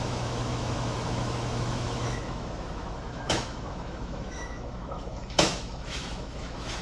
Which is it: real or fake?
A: fake